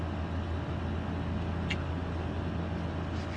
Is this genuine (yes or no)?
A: yes